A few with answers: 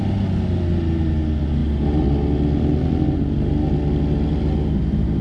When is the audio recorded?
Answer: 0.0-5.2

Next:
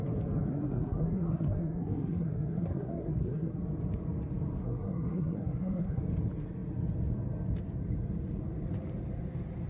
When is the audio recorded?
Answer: 0.0-0.5; 3.5-4.6; 6.0-9.7

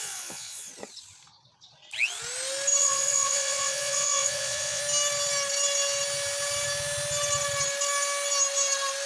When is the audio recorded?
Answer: 0.7-2.8; 4.8-9.1

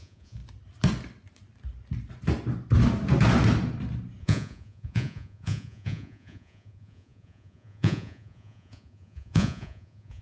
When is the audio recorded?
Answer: 0.4-4.2

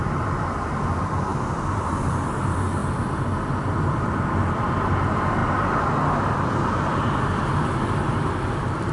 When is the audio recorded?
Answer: 2.8-3.9

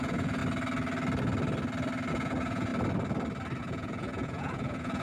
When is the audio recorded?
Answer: 0.4-2.1; 2.7-3.6

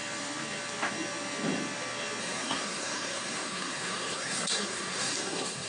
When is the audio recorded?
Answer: 0.0-2.2